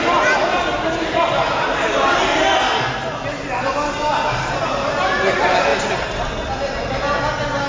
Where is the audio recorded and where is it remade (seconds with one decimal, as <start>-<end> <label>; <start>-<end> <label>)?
0.0-7.7 recorded

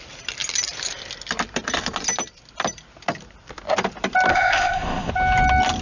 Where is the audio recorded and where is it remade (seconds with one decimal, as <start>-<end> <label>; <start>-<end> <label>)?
0.0-4.3 recorded; 4.3-5.1 remade; 5.1-5.8 recorded

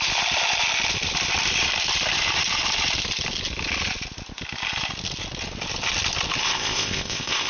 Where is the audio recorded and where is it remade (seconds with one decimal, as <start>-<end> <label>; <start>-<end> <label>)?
0.0-6.4 recorded; 6.4-7.5 remade